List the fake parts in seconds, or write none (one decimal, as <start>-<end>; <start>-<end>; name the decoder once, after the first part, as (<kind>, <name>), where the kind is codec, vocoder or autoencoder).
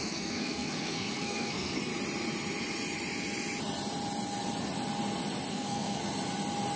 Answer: 0.0-1.9 (codec, SNAC); 5.5-6.0